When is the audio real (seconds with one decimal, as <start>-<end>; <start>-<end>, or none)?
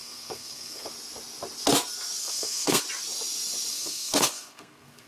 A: 0.9-2.2; 2.8-3.7